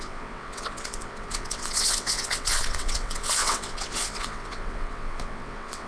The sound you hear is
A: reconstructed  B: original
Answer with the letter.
A